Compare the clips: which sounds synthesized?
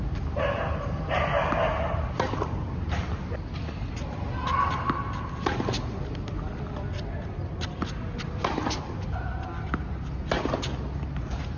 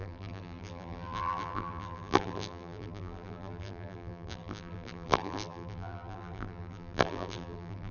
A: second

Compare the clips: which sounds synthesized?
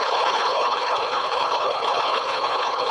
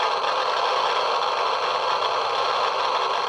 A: first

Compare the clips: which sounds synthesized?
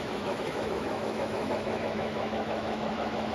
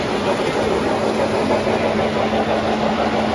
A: first